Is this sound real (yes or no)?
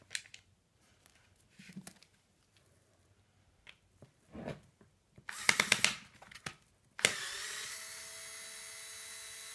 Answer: yes